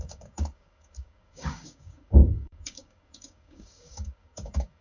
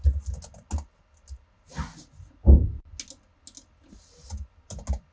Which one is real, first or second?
second